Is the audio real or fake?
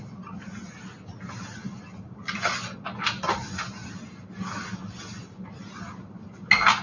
real